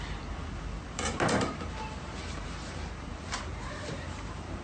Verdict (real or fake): fake